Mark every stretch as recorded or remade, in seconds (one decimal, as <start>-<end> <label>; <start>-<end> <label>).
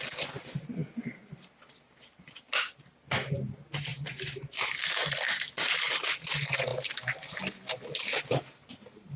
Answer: 0.0-3.9 recorded; 3.9-4.8 remade; 4.8-6.7 recorded; 6.7-7.4 remade; 7.4-9.2 recorded